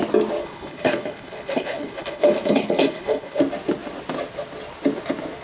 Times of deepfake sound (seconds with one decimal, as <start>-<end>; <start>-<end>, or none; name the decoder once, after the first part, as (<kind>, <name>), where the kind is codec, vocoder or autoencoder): 0.4-3.4 (codec, HILCodec)